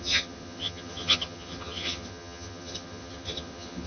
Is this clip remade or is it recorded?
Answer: remade